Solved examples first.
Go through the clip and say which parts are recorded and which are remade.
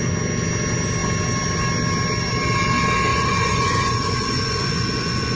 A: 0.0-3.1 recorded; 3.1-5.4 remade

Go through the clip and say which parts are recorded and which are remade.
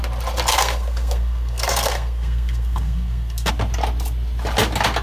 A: 0.0-0.5 recorded; 0.5-3.5 remade; 3.5-5.0 recorded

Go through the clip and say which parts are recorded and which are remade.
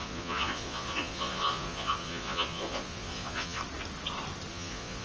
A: 0.0-3.6 remade; 3.6-4.5 recorded; 4.5-5.0 remade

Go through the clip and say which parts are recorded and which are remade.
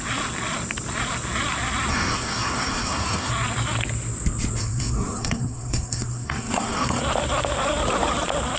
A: 0.0-1.9 recorded; 1.9-3.3 remade; 3.3-4.6 recorded; 4.6-7.0 remade; 7.0-8.6 recorded